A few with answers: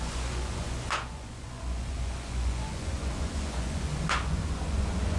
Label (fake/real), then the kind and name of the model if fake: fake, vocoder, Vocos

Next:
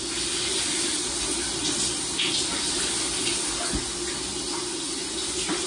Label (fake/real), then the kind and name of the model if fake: real